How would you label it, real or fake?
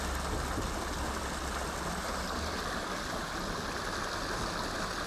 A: real